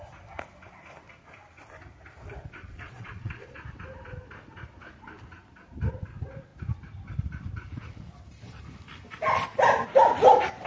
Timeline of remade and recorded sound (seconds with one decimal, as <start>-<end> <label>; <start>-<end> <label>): 0.0-2.6 recorded; 2.6-3.6 remade; 3.6-10.7 recorded